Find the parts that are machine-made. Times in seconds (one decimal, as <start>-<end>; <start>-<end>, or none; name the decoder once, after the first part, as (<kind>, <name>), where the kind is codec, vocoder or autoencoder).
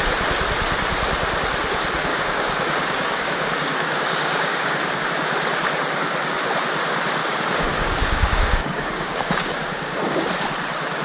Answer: 2.1-5.0 (codec, DAC); 7.2-10.3